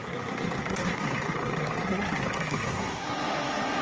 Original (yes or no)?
no